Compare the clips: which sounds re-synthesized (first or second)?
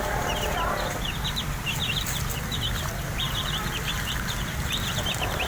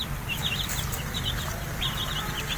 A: first